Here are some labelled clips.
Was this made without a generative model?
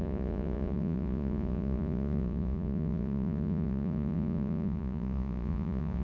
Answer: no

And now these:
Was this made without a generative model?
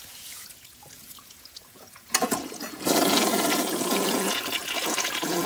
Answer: no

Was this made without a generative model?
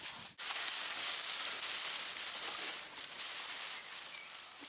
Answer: yes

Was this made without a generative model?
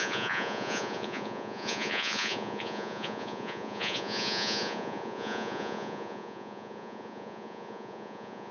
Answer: no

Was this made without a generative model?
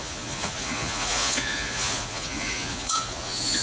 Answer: no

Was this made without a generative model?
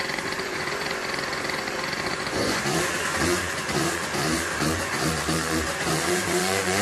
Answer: no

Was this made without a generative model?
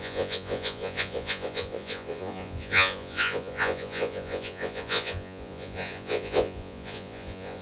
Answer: no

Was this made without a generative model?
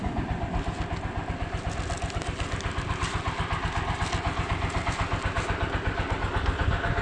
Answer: yes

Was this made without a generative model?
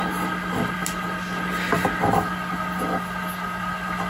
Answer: yes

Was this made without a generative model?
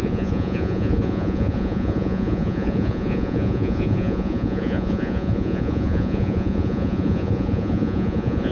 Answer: no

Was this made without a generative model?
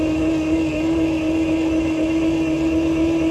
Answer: yes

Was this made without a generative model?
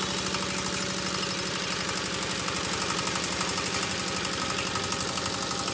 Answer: yes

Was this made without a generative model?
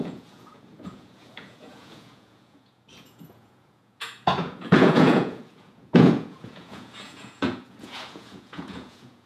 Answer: no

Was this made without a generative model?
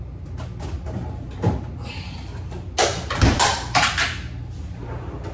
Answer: yes